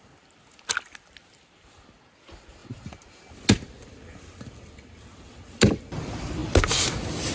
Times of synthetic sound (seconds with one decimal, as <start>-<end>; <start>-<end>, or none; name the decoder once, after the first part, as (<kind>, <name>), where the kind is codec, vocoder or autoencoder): none